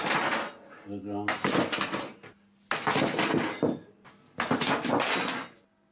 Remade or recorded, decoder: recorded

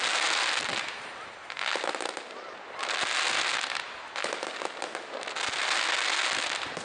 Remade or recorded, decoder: recorded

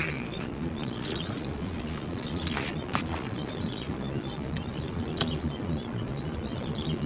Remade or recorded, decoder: remade, vocoder, Vocos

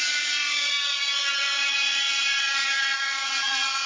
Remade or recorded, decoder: remade, vocoder, Vocos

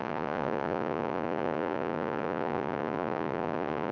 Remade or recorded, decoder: remade, vocoder, Vocos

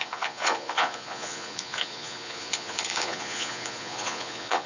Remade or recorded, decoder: remade, vocoder, Vocos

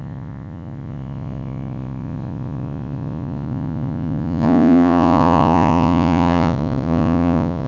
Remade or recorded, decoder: remade, vocoder, Vocos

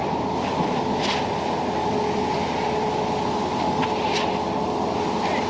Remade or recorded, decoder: recorded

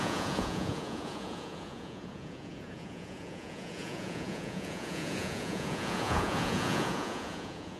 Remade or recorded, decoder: remade, vocoder, Vocos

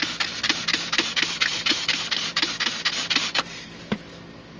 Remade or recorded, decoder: recorded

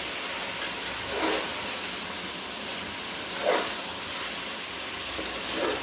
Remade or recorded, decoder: recorded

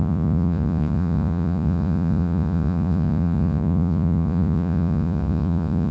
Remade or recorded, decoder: remade, vocoder, Vocos